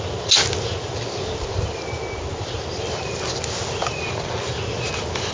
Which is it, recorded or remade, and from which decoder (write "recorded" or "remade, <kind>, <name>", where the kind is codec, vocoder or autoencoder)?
recorded